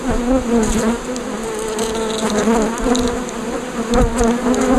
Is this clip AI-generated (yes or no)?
no